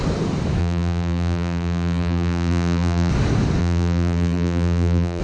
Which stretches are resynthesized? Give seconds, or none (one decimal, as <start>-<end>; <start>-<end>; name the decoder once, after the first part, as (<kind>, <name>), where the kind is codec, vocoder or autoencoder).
0.6-3.1 (vocoder, BigVGAN v2); 3.6-5.2